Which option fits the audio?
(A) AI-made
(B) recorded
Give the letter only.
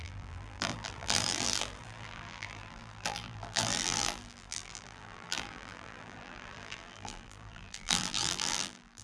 A